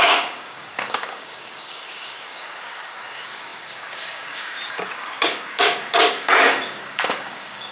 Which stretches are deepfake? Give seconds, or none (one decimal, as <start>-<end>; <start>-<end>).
0.0-7.7